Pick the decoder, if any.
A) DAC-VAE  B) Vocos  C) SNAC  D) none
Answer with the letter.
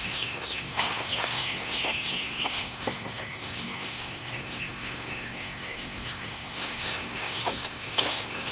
C